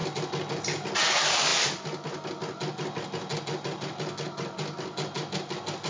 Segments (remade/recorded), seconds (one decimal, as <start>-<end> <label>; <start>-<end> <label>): 0.0-5.9 recorded